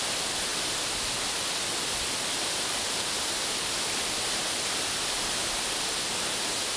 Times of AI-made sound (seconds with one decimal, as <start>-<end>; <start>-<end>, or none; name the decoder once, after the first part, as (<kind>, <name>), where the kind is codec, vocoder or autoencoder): none

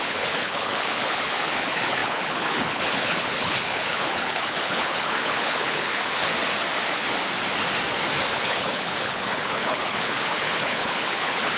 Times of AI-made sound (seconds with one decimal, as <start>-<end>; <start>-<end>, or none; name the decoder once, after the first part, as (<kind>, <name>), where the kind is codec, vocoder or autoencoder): 0.0-6.3 (codec, HILCodec); 8.3-11.6